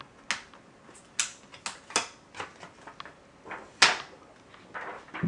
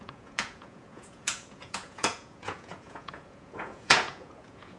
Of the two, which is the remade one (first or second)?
second